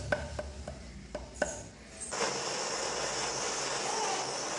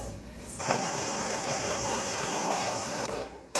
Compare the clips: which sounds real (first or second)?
first